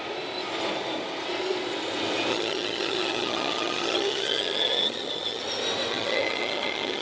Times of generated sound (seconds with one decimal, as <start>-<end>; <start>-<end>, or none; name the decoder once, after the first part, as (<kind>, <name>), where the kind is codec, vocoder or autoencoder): 2.3-5.4 (vocoder, HiFi-GAN); 5.9-7.0